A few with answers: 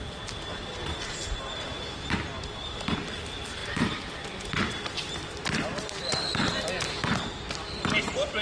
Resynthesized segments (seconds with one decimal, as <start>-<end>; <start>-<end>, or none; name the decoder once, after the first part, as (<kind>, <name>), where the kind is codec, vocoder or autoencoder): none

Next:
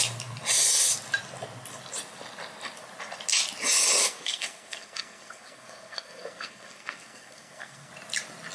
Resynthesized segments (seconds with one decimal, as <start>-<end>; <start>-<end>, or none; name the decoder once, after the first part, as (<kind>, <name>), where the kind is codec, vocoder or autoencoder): 4.0-7.9 (codec, SNAC)

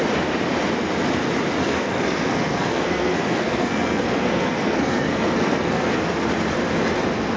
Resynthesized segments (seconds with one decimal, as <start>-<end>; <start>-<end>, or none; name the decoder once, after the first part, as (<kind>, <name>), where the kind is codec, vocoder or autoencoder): 1.6-6.0 (codec, SNAC)

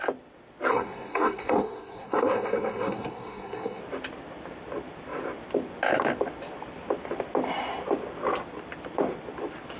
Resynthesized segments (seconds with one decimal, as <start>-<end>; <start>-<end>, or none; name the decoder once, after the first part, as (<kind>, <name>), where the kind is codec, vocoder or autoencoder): 0.7-3.8 (codec, SNAC)